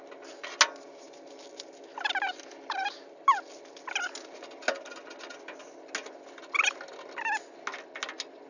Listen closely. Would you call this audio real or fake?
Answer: real